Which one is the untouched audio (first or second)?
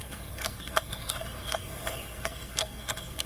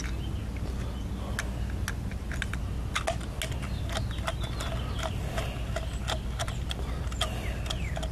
second